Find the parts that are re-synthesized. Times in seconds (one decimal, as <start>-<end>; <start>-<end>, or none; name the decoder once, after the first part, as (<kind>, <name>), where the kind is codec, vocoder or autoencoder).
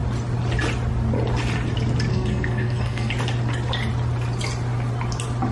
2.1-3.1 (codec, SNAC)